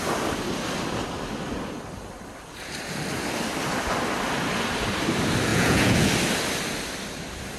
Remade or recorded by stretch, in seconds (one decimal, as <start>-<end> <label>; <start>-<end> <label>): 0.0-5.5 recorded; 5.5-6.1 remade; 6.1-7.6 recorded